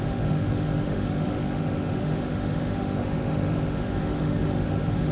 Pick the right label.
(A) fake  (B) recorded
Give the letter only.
A